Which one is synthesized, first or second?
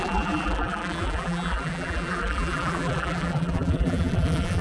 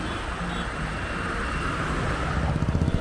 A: first